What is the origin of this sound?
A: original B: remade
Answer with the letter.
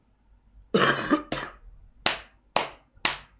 A